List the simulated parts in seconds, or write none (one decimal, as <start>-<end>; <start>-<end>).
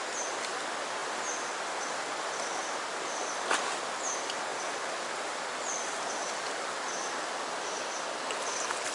1.0-4.1; 4.5-7.4